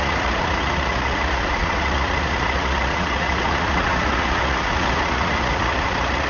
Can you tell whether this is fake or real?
fake